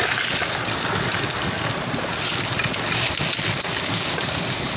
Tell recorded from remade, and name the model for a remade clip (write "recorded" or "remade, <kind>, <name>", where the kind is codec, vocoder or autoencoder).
recorded